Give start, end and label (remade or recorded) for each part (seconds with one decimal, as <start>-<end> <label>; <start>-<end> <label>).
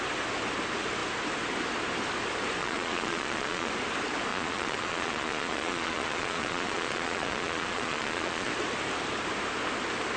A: 0.0-2.6 recorded; 2.6-3.7 remade; 3.7-4.3 recorded; 4.3-8.5 remade; 8.5-10.2 recorded